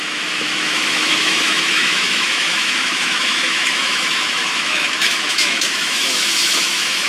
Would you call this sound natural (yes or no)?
no